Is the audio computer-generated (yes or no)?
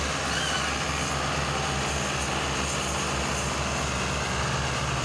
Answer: no